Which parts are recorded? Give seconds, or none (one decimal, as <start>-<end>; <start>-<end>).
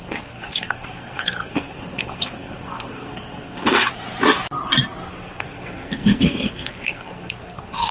3.9-5.1